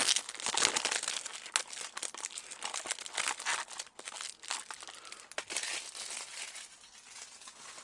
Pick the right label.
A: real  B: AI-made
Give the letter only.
A